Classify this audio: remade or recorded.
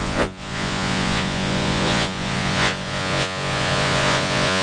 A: remade